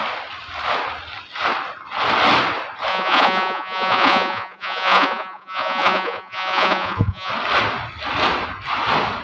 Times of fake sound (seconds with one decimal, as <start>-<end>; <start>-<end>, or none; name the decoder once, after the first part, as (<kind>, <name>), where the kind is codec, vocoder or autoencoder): 2.9-7.3 (vocoder, Vocos)